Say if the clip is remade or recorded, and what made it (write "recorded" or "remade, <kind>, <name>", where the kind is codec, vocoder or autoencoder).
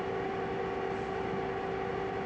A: recorded